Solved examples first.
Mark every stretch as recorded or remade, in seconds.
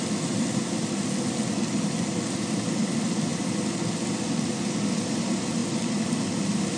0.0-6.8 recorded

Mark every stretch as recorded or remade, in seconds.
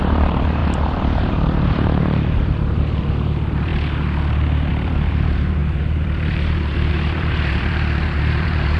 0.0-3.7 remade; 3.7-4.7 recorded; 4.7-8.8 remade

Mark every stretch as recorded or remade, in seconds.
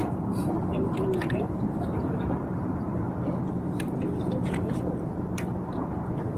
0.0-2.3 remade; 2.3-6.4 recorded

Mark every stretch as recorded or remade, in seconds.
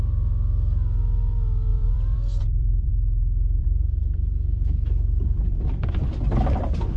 0.0-1.7 recorded; 1.7-2.9 remade; 2.9-3.6 recorded; 3.6-6.4 remade; 6.4-7.0 recorded